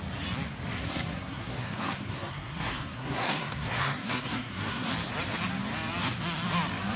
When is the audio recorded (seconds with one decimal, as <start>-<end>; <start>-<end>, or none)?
0.0-0.7; 4.9-7.0